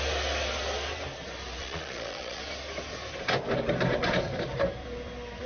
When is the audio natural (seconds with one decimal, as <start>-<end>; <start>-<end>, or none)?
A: 0.0-1.6; 2.4-5.5